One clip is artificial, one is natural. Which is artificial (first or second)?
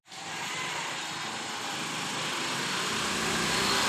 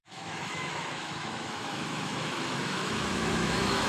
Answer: second